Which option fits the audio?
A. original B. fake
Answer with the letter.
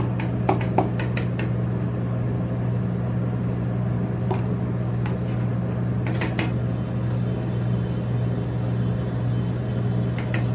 A